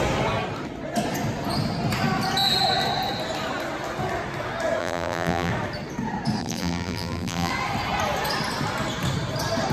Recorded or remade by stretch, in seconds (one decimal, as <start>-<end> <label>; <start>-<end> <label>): 0.0-4.8 recorded; 4.8-5.5 remade; 5.5-6.4 recorded; 6.4-7.5 remade; 7.5-9.7 recorded